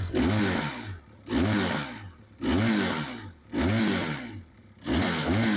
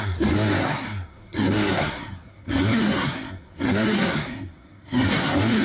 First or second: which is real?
first